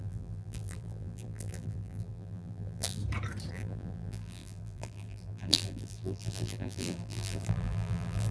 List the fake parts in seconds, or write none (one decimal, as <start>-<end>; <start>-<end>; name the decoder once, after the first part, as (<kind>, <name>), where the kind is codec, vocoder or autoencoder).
0.0-3.0 (vocoder, BigVGAN v2); 3.5-8.3